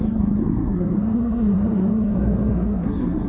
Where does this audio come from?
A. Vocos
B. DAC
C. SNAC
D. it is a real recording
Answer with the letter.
C